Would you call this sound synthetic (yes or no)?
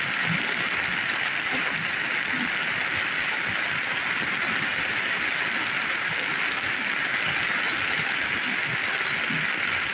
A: no